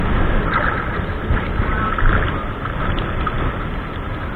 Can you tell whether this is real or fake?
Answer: real